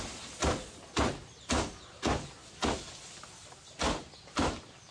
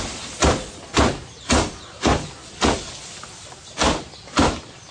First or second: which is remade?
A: second